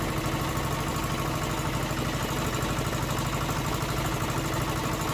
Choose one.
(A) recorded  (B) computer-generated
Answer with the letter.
A